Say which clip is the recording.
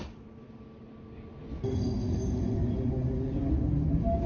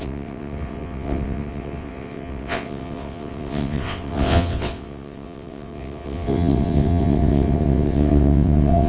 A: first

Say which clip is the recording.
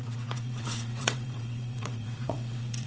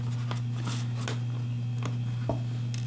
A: second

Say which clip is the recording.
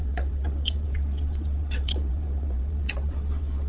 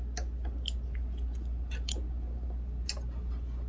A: second